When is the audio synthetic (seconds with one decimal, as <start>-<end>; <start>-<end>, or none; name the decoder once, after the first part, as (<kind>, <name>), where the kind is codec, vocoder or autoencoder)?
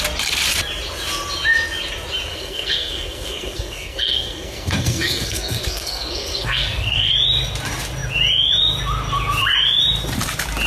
2.3-7.1 (codec, SNAC)